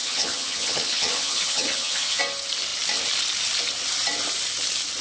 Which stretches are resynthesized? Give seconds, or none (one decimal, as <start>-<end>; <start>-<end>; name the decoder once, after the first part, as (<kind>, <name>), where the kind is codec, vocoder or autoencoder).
0.0-2.2 (vocoder, HiFi-GAN)